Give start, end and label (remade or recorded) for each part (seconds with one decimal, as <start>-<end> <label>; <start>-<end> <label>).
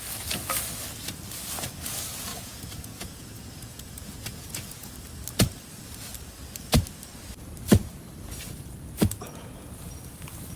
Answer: 0.0-2.3 recorded; 2.3-4.9 remade; 4.9-10.6 recorded